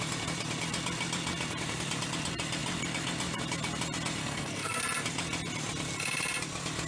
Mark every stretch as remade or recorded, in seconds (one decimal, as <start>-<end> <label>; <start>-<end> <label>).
0.0-4.2 recorded; 4.2-4.8 remade; 4.8-6.9 recorded